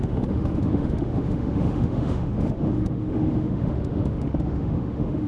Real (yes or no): no